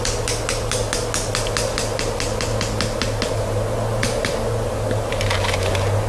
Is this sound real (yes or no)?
yes